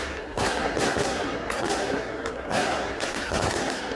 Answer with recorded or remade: remade